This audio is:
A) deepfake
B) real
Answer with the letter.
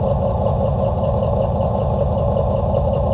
B